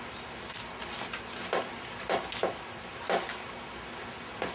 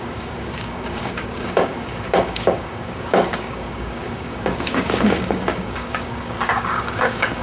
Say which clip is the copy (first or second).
second